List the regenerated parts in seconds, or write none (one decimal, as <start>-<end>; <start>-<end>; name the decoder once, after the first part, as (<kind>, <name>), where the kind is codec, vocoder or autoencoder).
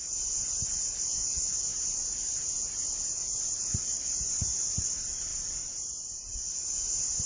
none